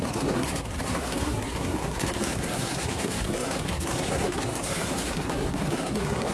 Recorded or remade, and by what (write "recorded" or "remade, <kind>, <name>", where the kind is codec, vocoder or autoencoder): remade, codec, SNAC